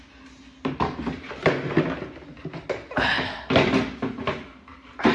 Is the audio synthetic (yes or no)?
no